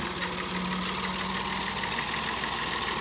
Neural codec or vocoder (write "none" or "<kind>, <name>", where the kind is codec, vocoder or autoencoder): none